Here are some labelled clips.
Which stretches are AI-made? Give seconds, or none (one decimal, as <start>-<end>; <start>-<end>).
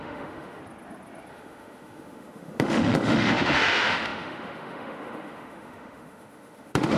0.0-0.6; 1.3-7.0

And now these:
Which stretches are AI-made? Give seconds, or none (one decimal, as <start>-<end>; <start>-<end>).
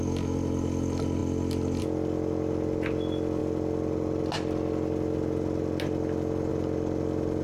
none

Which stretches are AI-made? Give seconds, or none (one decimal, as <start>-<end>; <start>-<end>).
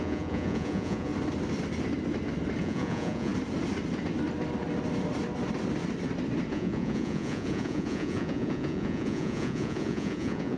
0.0-1.1; 2.6-3.3; 6.5-10.6